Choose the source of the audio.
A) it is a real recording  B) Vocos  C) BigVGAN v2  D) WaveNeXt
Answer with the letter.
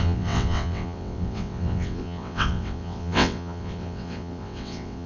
D